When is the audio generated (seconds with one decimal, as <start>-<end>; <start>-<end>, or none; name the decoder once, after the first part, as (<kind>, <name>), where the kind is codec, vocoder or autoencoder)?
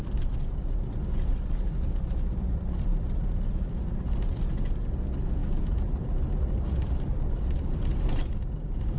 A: none